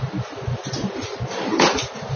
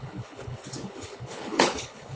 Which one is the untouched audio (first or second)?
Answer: first